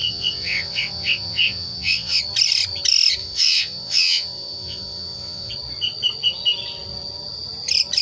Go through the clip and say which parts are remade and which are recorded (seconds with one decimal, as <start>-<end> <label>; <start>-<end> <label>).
0.0-2.2 remade; 2.2-3.2 recorded; 3.2-5.5 remade; 5.5-8.0 recorded

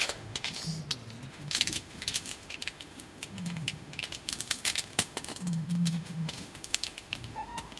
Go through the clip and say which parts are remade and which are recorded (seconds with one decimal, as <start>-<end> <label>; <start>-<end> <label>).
0.0-0.6 remade; 0.6-1.3 recorded; 1.3-7.8 remade

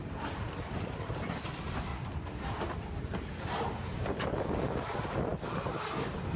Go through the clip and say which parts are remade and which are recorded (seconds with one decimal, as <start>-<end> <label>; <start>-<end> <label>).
0.0-1.9 remade; 1.9-4.5 recorded; 4.5-5.3 remade; 5.3-6.4 recorded